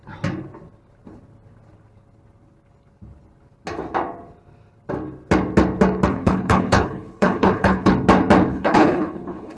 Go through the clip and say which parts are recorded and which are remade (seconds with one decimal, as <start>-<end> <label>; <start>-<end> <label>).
0.0-6.1 recorded; 6.1-7.9 remade; 7.9-8.5 recorded; 8.5-9.6 remade